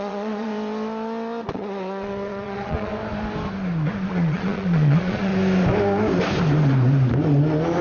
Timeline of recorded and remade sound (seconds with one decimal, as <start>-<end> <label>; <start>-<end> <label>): 0.0-0.5 remade; 0.5-1.5 recorded; 1.5-2.9 remade; 2.9-4.1 recorded; 4.1-5.3 remade; 5.3-7.8 recorded